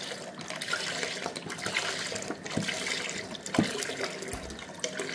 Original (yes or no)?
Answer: yes